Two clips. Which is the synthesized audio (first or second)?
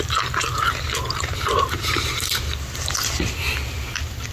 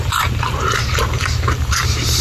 second